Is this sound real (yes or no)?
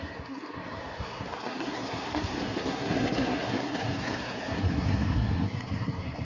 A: no